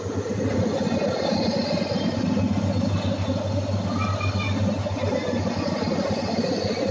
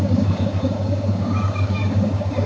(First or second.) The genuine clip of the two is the first